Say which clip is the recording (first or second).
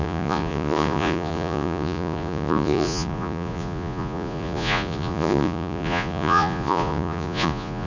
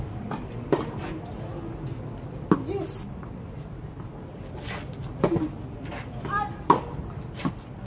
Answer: second